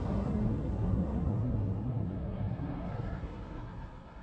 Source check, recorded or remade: remade